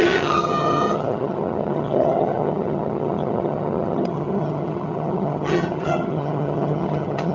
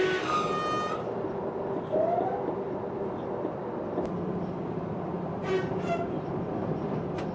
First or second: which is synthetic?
first